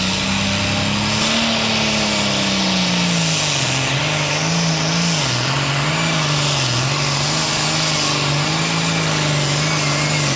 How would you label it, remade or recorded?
recorded